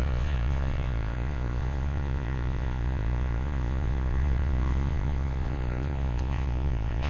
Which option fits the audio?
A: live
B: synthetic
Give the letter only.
B